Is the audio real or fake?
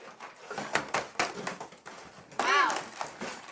real